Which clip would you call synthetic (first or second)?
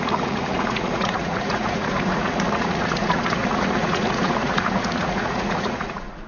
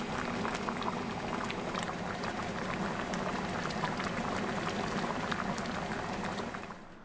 first